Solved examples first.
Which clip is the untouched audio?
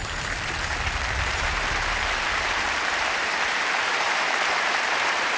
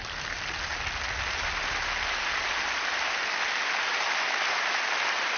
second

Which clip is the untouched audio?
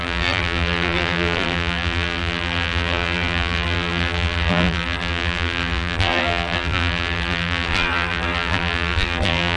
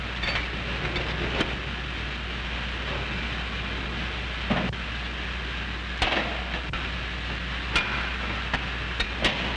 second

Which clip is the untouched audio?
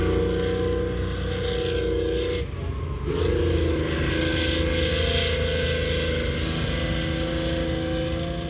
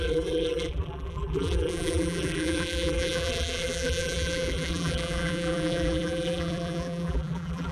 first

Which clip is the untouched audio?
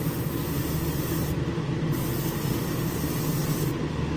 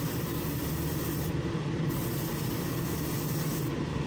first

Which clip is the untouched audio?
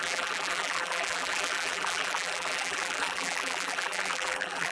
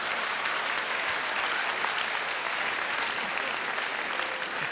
second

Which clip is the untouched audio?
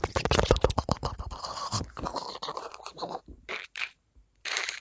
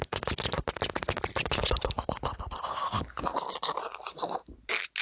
second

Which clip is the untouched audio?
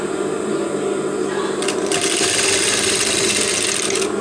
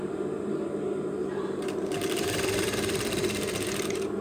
first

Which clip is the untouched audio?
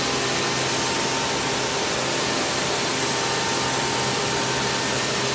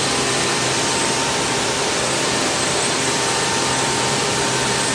first